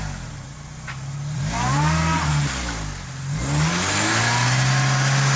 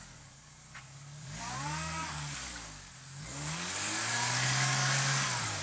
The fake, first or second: second